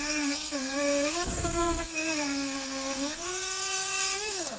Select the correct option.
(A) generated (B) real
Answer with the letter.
A